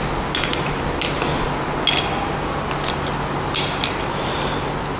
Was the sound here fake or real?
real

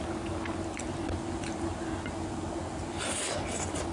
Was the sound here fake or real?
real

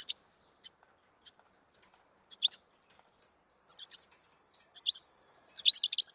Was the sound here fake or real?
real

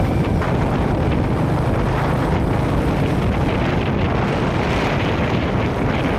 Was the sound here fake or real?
real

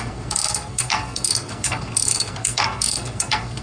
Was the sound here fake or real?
fake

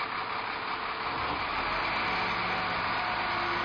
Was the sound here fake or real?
real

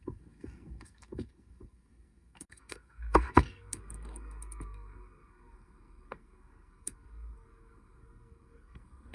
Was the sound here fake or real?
fake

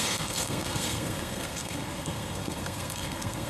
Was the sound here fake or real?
fake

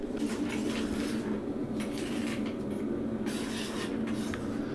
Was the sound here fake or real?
real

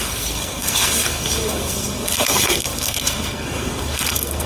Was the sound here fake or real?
fake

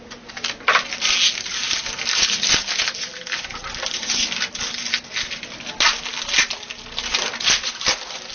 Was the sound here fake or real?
real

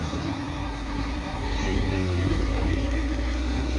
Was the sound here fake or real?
fake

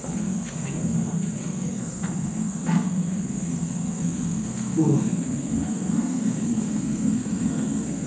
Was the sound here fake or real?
fake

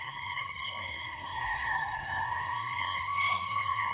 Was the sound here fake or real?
fake